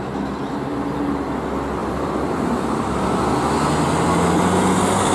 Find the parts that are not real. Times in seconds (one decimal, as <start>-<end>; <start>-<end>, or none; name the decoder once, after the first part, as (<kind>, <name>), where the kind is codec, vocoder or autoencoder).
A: 0.7-1.3 (vocoder, BigVGAN v2); 1.8-3.7